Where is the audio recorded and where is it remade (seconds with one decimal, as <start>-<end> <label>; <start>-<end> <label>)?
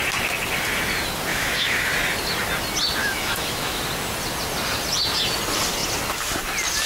0.0-1.3 recorded; 1.3-1.9 remade; 1.9-3.0 recorded; 3.0-3.8 remade; 3.8-6.9 recorded